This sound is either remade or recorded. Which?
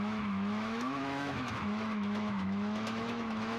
remade